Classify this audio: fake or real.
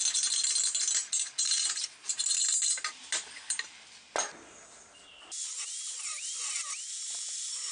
real